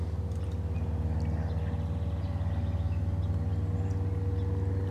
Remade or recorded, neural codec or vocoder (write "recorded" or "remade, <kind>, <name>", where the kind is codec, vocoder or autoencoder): recorded